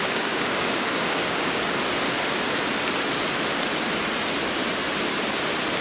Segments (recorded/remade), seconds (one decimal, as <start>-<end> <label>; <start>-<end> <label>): 0.0-1.6 remade; 1.6-5.8 recorded